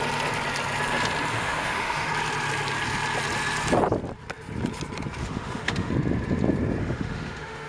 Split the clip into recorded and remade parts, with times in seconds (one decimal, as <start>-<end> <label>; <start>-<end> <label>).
0.0-1.3 recorded; 1.3-2.1 remade; 2.1-5.2 recorded; 5.2-5.9 remade; 5.9-6.8 recorded; 6.8-7.7 remade